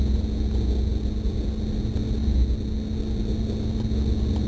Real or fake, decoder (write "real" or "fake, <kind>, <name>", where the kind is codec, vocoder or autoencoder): real